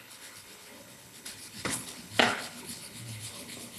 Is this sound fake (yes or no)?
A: yes